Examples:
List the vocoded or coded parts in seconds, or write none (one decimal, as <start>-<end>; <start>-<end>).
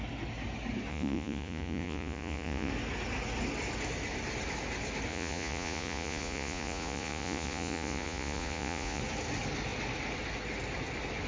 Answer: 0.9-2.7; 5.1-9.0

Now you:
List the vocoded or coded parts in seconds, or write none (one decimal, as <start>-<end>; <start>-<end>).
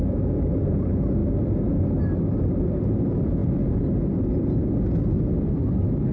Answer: none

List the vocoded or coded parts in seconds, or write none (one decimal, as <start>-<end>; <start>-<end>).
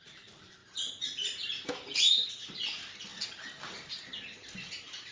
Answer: none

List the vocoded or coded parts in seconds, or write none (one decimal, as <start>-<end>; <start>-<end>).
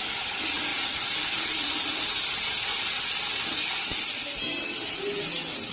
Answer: none